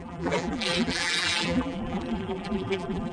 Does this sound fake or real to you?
fake